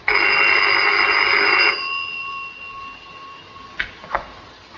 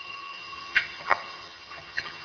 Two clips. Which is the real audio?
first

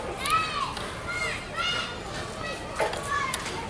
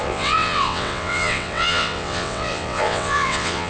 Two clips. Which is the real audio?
first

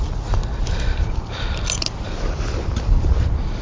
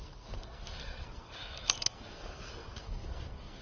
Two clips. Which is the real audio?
first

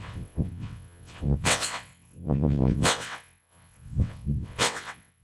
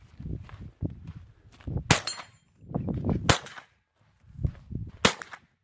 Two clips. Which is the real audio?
second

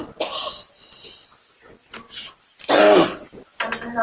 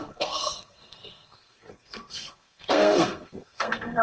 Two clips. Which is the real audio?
first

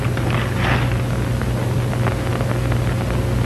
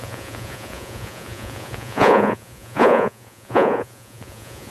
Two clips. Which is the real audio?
first